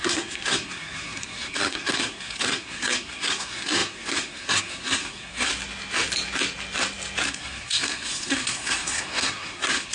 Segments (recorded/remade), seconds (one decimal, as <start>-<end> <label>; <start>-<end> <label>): 0.0-5.5 remade; 5.5-7.3 recorded; 7.3-9.9 remade